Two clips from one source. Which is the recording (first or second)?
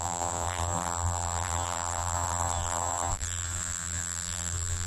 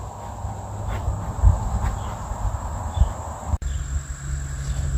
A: second